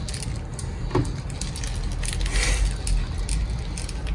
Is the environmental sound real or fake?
real